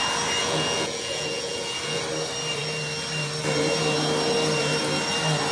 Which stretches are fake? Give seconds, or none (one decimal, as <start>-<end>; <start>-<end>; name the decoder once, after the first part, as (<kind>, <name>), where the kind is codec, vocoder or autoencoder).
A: 0.4-2.0 (vocoder, Vocos)